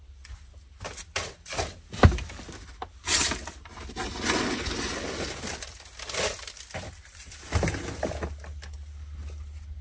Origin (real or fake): real